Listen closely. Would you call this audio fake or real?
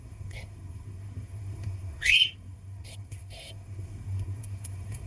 fake